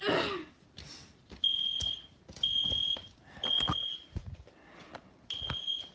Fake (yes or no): no